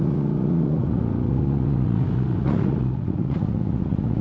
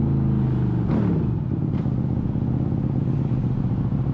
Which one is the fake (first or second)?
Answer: first